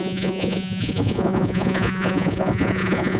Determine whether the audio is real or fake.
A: fake